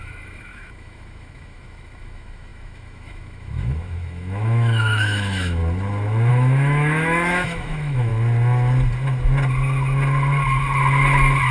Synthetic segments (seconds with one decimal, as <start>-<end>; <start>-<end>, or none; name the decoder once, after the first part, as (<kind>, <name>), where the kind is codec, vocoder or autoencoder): 0.0-5.6 (autoencoder, DAC-VAE); 6.3-8.1